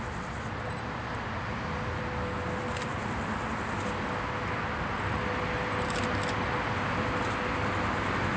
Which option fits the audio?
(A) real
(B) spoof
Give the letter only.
A